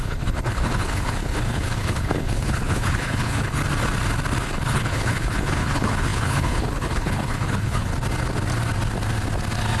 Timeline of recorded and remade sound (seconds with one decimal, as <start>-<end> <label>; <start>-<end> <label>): 0.0-3.6 remade; 3.6-4.4 recorded; 4.4-7.9 remade; 7.9-9.8 recorded